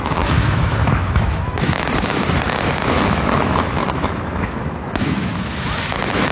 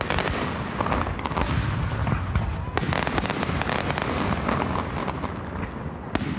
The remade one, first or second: first